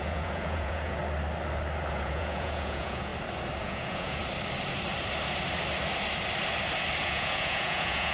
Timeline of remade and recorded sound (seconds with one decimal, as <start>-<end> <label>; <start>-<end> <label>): 0.0-1.0 remade; 1.0-1.9 recorded; 1.9-3.1 remade; 3.1-3.6 recorded; 3.6-4.2 remade; 4.2-7.0 recorded; 7.0-8.1 remade